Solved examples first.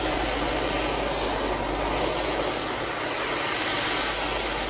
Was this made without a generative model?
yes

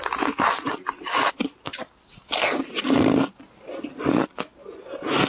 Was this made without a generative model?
yes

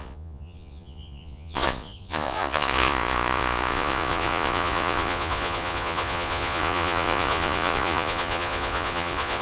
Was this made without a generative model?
no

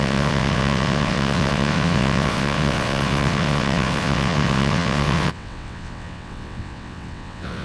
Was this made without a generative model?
no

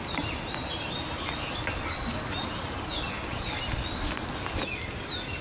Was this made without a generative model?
yes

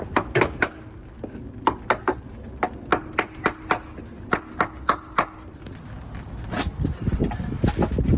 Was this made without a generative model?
yes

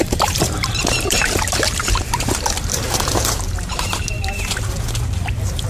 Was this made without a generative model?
no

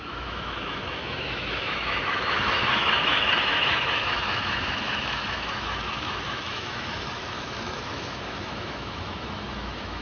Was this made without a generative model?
no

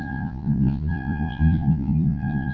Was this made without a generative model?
no